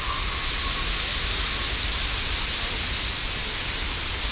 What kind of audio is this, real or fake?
real